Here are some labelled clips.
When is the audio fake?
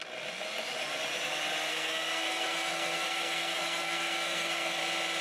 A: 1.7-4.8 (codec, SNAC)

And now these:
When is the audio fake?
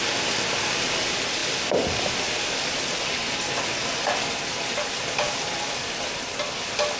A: none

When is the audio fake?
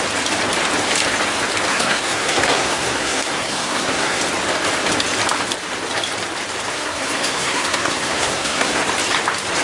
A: 1.7-4.2 (codec, SNAC); 6.7-8.8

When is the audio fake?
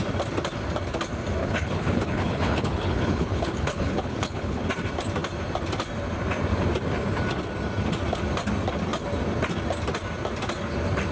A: 1.4-4.6 (codec, HILCodec)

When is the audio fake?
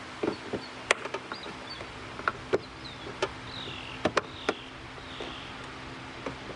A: none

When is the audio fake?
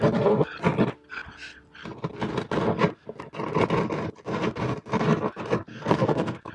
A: 5.7-6.5 (codec, SNAC)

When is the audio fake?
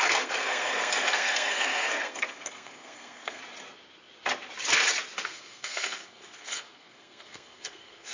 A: 0.0-3.4 (codec, SNAC); 5.2-8.1